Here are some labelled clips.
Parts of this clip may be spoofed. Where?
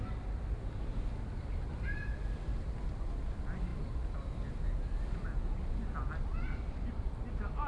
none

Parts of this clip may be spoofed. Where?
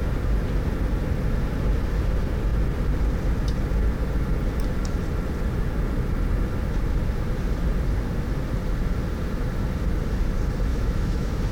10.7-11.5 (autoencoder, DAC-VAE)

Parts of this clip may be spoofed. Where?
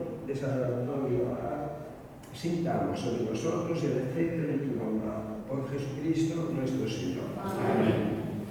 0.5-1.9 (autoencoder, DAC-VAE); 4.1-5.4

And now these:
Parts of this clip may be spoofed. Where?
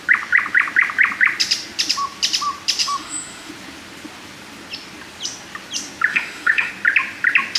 2.8-3.5 (autoencoder, DAC-VAE); 6.1-6.7